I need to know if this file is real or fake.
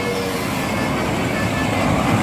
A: real